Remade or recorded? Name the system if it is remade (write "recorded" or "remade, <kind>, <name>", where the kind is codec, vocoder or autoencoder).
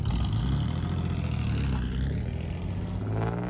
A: recorded